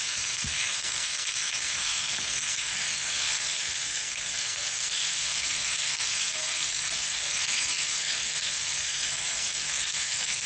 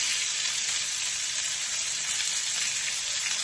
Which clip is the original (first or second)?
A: second